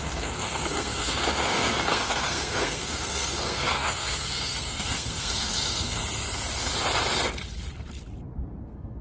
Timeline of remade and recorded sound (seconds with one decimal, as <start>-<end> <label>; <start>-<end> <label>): 0.0-6.0 remade; 6.0-8.6 recorded; 8.6-9.0 remade